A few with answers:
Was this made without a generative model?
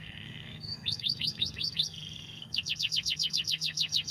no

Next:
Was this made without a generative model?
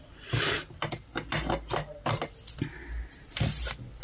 yes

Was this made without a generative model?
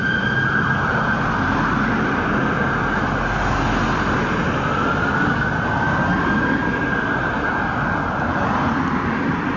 yes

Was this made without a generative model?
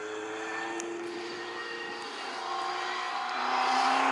yes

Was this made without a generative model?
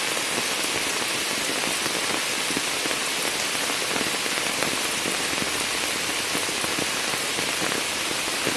yes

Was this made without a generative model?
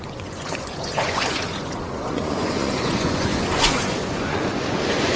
no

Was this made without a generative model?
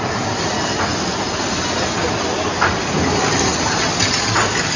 yes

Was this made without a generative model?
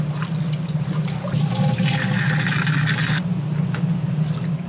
yes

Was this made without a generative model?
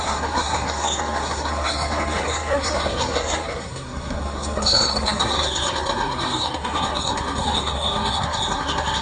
no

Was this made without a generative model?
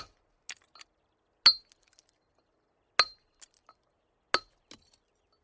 yes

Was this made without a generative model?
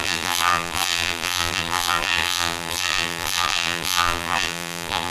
no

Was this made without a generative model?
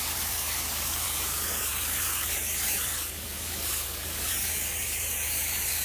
no